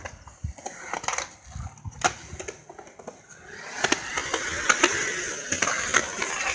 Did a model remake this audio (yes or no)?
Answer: no